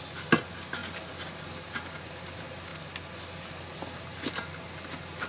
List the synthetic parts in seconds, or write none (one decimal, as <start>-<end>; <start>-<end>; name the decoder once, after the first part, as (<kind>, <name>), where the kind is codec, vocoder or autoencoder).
none